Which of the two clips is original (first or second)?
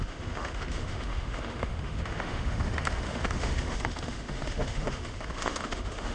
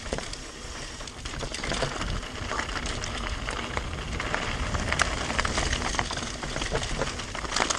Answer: second